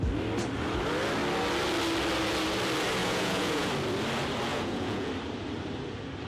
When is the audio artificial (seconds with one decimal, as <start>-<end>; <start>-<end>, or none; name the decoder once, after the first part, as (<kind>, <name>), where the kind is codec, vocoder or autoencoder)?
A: 3.0-3.7 (vocoder, Vocos); 4.5-5.1

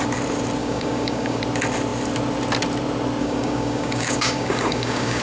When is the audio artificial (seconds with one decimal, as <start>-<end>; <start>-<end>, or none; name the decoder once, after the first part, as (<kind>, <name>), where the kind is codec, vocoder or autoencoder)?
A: 0.6-1.4 (codec, DAC); 3.2-5.2

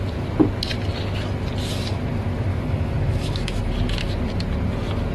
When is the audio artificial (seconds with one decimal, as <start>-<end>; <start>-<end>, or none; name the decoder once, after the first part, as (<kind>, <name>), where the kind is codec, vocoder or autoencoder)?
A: 2.5-3.6 (autoencoder, DAC-VAE)

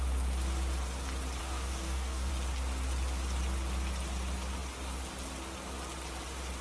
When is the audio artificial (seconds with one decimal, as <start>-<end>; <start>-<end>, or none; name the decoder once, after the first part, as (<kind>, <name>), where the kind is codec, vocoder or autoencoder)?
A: 1.4-2.3 (codec, DAC)

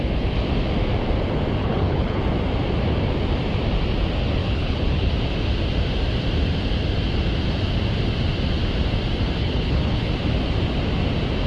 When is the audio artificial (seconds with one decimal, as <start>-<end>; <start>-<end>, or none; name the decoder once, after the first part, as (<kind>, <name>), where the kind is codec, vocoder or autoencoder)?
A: 1.6-2.2 (codec, HILCodec); 4.4-5.1; 9.4-10.1

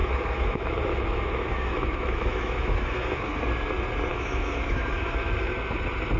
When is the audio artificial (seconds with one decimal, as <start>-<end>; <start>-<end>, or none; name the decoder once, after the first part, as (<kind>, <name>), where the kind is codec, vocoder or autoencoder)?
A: 0.0-3.4 (autoencoder, DAC-VAE); 4.1-5.5

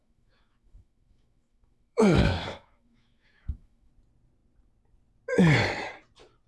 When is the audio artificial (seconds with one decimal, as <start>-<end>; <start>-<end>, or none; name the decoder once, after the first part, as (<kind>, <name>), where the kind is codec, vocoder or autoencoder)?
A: 0.0-3.9 (autoencoder, DAC-VAE)